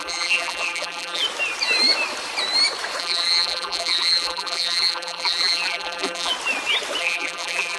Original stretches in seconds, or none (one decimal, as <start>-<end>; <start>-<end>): 1.2-3.0; 6.3-7.0